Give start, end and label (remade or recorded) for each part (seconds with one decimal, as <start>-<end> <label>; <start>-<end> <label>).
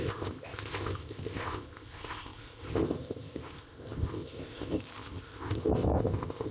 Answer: 0.0-6.5 remade